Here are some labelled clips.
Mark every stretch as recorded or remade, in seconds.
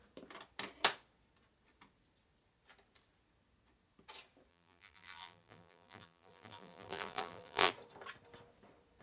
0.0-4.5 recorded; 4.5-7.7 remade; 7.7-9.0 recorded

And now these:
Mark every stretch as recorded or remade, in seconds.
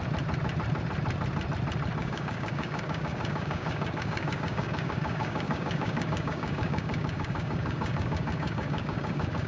0.0-2.0 recorded; 2.0-9.5 remade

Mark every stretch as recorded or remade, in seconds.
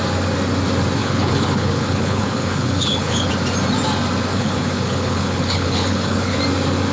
0.0-1.0 recorded; 1.0-3.3 remade; 3.3-4.3 recorded; 4.3-6.4 remade; 6.4-6.9 recorded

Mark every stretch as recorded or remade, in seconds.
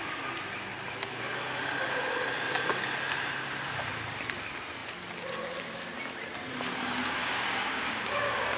0.0-7.2 recorded; 7.2-8.6 remade